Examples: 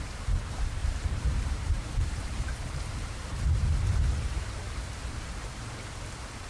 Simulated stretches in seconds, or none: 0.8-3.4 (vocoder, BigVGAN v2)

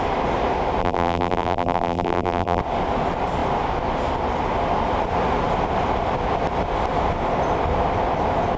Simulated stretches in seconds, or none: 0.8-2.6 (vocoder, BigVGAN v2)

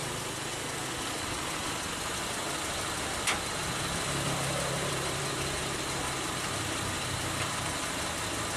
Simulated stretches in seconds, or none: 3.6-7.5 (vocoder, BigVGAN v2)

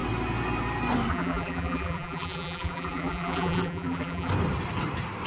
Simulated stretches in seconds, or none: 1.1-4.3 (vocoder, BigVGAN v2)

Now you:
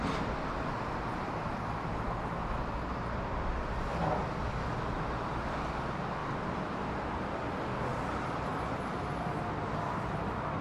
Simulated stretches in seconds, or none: 7.9-8.9 (vocoder, BigVGAN v2)

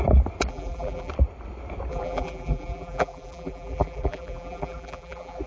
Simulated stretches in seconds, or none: 0.5-1.1 (vocoder, BigVGAN v2); 1.9-5.5

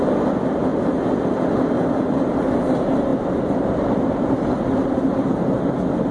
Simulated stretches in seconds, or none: 3.1-5.6 (vocoder, BigVGAN v2)